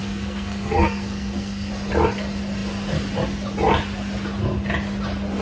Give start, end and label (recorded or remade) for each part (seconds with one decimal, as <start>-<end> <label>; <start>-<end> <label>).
0.0-1.7 remade; 1.7-5.4 recorded